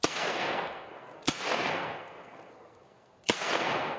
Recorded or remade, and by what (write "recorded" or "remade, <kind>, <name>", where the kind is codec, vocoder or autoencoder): remade, codec, SNAC